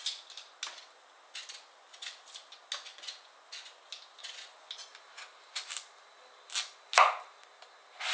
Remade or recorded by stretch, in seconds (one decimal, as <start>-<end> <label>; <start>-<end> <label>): 0.0-2.9 recorded; 2.9-3.5 remade; 3.5-4.2 recorded; 4.2-4.7 remade; 4.7-8.1 recorded